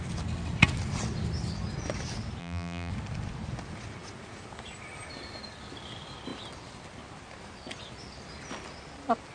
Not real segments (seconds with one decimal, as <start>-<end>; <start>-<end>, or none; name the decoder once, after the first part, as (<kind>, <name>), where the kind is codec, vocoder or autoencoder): 2.4-2.9 (vocoder, BigVGAN v2)